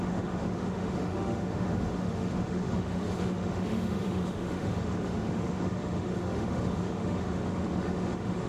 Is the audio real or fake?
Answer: fake